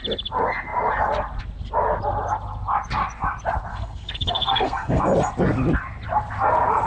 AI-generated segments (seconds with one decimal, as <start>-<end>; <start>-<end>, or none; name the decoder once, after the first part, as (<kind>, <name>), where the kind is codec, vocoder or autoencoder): 3.7-5.0 (codec, SNAC)